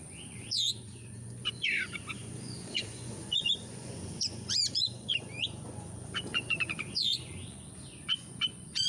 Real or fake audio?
fake